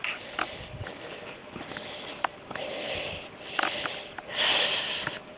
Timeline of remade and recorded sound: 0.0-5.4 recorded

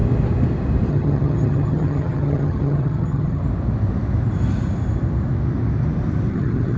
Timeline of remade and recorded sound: 0.0-0.9 recorded; 0.9-3.4 remade; 3.4-6.3 recorded; 6.3-6.8 remade

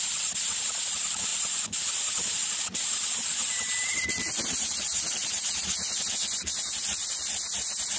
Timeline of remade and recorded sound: 0.0-8.0 recorded

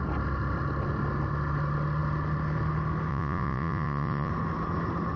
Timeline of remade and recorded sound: 0.0-3.1 recorded; 3.1-4.3 remade; 4.3-5.2 recorded

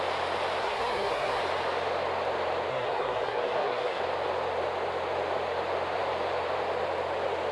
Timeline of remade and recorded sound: 0.0-0.6 recorded; 0.6-1.4 remade; 1.4-2.7 recorded; 2.7-4.0 remade; 4.0-7.5 recorded